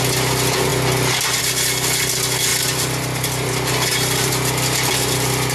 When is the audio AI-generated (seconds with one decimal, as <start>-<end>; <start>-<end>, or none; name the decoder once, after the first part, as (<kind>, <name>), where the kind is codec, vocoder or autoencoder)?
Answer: 2.5-4.3 (vocoder, BigVGAN v2)